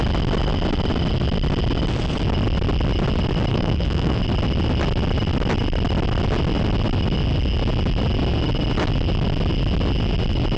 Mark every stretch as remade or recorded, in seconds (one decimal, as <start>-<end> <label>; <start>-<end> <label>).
0.0-3.5 recorded; 3.5-4.2 remade; 4.2-10.6 recorded